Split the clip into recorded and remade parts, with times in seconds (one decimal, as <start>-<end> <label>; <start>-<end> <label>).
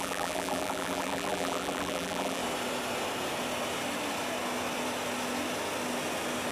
0.0-2.4 remade; 2.4-6.5 recorded